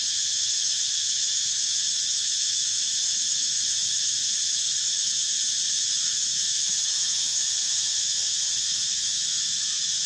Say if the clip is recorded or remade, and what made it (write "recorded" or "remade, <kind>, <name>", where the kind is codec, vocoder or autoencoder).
remade, autoencoder, DAC-VAE